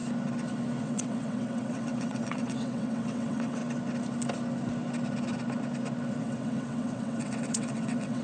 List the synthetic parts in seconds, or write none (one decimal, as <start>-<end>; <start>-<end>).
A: 0.8-3.6; 6.2-8.2